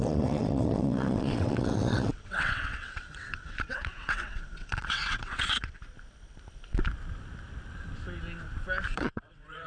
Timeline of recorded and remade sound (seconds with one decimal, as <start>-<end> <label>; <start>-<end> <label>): 0.0-5.8 remade; 5.8-8.9 recorded; 8.9-9.7 remade